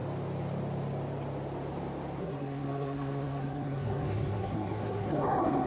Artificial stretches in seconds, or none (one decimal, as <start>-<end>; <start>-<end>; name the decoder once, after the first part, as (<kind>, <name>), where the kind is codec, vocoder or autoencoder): 2.2-5.7 (codec, SNAC)